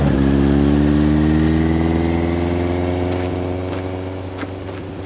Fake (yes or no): no